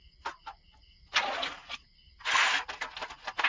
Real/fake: real